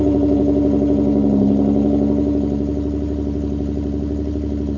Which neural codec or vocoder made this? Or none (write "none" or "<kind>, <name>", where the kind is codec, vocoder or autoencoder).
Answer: none